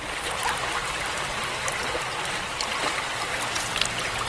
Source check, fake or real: real